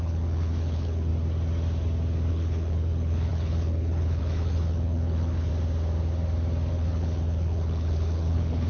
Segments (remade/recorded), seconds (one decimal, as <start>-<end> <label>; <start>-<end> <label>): 0.0-1.1 remade; 1.1-2.3 recorded; 2.3-5.5 remade; 5.5-6.7 recorded; 6.7-8.7 remade